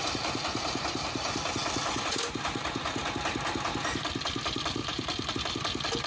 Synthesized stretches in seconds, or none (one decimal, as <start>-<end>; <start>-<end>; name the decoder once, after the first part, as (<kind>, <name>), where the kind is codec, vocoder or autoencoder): 4.8-5.3 (vocoder, BigVGAN v2)